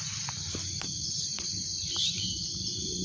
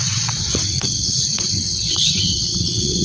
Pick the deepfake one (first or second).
second